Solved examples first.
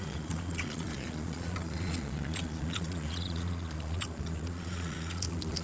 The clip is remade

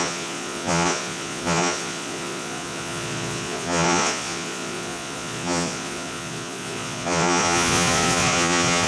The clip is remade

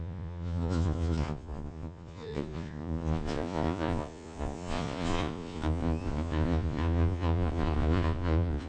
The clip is remade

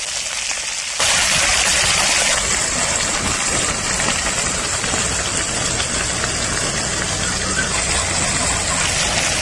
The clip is recorded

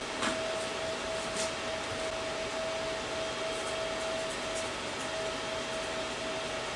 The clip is recorded